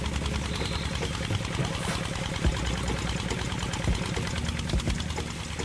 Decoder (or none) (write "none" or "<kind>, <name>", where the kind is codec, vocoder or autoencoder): none